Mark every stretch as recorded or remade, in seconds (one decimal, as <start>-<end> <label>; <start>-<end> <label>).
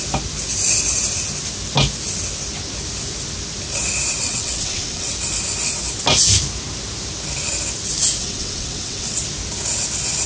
0.0-4.2 recorded; 4.2-5.1 remade; 5.1-8.2 recorded; 8.2-9.2 remade; 9.2-10.3 recorded